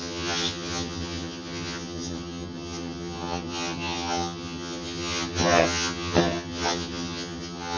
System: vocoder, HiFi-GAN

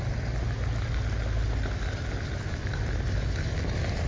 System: none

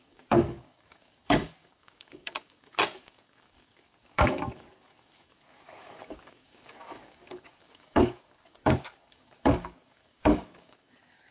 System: codec, DAC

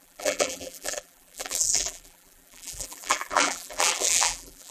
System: vocoder, BigVGAN v2